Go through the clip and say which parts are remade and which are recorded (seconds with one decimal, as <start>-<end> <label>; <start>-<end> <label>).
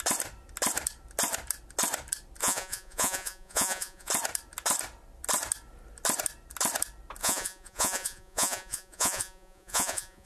0.0-2.4 recorded; 2.4-4.1 remade; 4.1-7.2 recorded; 7.2-10.3 remade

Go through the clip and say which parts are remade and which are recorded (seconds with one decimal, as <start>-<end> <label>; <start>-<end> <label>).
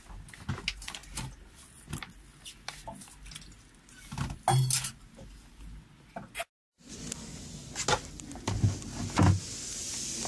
0.0-10.3 recorded